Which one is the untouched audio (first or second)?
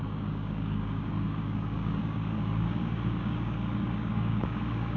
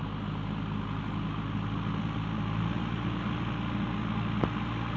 second